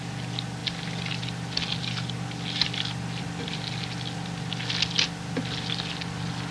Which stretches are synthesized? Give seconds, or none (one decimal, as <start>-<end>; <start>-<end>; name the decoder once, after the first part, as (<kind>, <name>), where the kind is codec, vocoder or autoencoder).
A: none